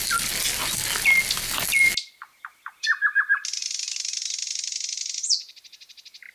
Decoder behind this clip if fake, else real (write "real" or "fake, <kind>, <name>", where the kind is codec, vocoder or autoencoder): real